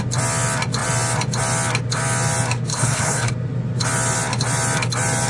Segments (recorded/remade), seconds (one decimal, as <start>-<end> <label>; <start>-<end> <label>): 0.0-2.7 recorded; 2.7-3.3 remade; 3.3-5.3 recorded